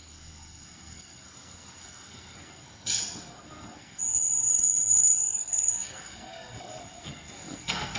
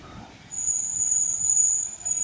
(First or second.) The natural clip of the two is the second